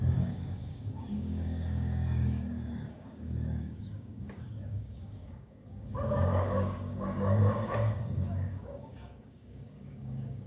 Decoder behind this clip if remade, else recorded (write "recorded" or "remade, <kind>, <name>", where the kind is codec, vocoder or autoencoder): remade, codec, DAC